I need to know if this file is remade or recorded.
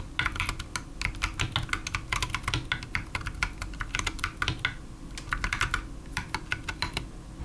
recorded